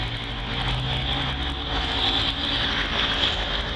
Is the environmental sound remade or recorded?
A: recorded